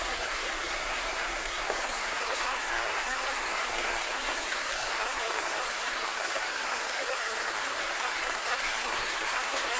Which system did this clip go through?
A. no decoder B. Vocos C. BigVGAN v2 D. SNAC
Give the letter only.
D